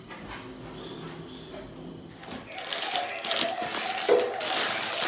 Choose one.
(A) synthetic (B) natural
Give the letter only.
B